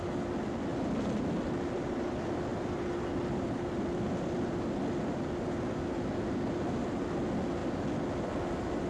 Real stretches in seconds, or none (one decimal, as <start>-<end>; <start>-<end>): 0.0-2.5; 4.4-7.6; 8.4-8.9